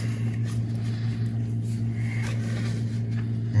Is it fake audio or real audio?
real